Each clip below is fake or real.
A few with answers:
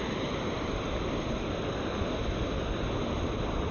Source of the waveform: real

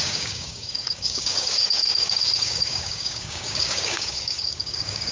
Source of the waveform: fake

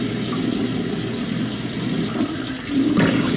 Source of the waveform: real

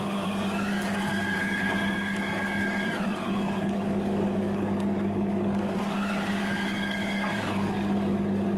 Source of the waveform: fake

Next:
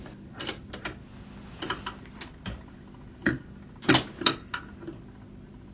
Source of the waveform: real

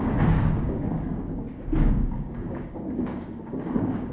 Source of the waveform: fake